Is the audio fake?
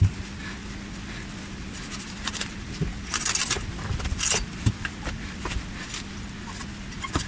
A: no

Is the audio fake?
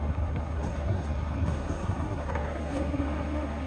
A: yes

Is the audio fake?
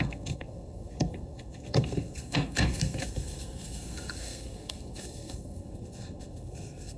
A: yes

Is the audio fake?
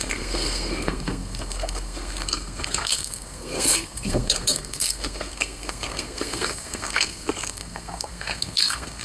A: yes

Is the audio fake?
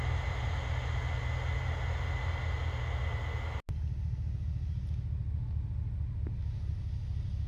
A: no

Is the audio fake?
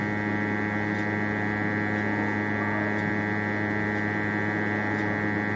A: no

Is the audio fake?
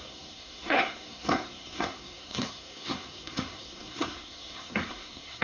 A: yes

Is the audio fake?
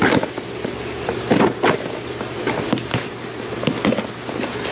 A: no